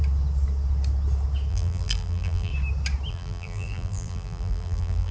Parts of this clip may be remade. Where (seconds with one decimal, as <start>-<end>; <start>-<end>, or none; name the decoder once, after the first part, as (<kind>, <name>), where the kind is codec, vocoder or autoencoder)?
1.5-2.5 (vocoder, BigVGAN v2); 3.1-5.1